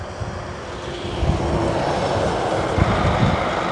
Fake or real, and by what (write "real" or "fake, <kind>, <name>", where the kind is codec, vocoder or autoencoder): real